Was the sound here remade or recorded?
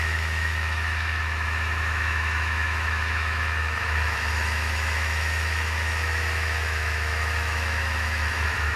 remade